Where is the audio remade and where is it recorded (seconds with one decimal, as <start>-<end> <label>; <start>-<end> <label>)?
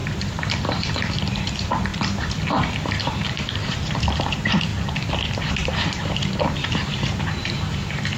0.0-1.9 remade; 1.9-2.7 recorded; 2.7-4.7 remade; 4.7-5.5 recorded; 5.5-8.2 remade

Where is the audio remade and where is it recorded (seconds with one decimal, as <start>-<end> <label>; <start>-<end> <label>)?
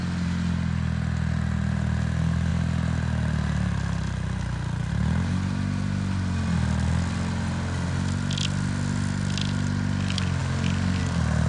0.0-11.5 recorded